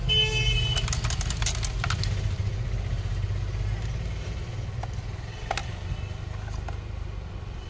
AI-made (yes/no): no